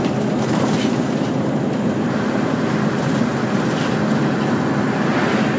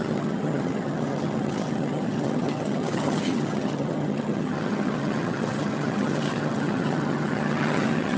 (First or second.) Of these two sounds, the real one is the first